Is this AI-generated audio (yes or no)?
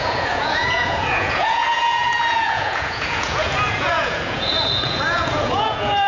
yes